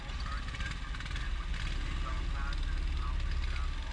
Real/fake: real